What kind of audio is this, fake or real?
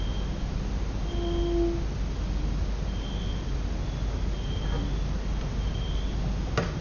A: real